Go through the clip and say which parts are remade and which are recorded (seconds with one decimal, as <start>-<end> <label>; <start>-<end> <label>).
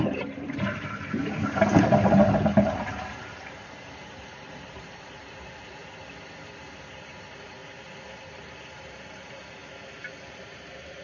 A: 0.0-5.8 remade; 5.8-6.9 recorded; 6.9-7.6 remade; 7.6-8.2 recorded; 8.2-9.6 remade; 9.6-10.3 recorded; 10.3-11.0 remade